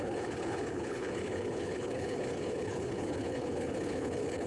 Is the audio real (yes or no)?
no